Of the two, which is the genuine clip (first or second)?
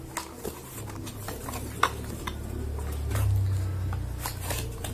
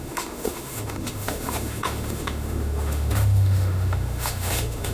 first